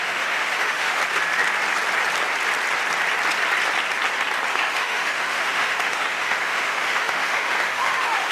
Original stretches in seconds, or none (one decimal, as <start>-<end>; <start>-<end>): 1.0-4.5